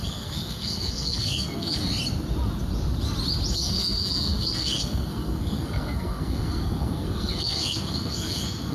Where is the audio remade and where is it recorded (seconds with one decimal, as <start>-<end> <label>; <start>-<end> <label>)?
0.0-1.9 remade; 1.9-3.5 recorded; 3.5-8.7 remade